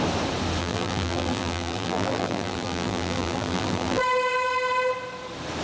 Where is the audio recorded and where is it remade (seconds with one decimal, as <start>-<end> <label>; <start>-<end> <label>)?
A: 0.0-0.6 recorded; 0.6-4.0 remade; 4.0-5.6 recorded